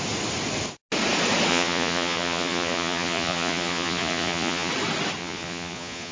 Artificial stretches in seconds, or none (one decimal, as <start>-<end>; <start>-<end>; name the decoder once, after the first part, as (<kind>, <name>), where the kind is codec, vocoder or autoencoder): 1.5-4.7 (vocoder, Vocos); 5.2-6.1